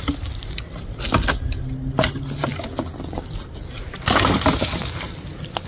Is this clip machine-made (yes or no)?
no